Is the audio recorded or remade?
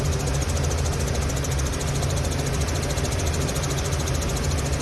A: recorded